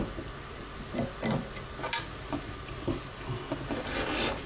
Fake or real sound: real